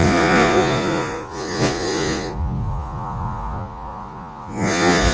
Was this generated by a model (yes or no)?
yes